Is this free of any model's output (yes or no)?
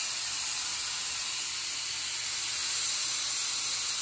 yes